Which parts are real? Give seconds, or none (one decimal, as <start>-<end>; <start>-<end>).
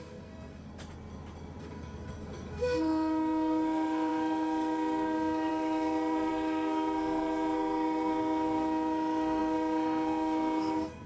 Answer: 0.7-1.6